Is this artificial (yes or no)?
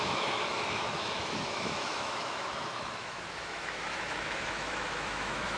yes